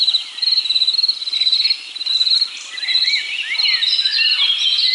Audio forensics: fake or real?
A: real